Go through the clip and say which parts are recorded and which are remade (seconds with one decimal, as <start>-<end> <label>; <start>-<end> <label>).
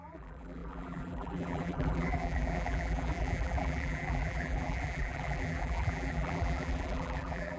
0.0-7.6 remade